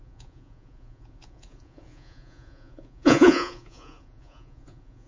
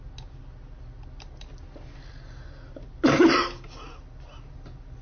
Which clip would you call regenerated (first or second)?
first